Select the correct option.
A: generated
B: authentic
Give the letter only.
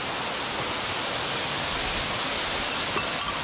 B